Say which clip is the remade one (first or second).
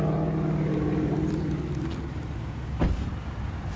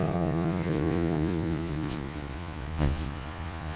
second